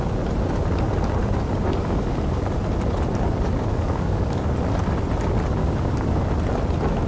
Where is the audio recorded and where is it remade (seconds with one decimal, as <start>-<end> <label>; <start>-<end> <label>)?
0.0-1.8 recorded; 1.8-2.4 remade; 2.4-3.7 recorded; 3.7-4.5 remade; 4.5-5.6 recorded; 5.6-6.2 remade; 6.2-7.1 recorded